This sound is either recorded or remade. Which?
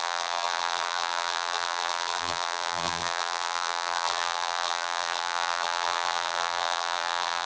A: remade